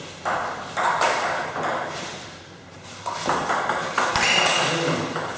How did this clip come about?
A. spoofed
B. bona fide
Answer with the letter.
B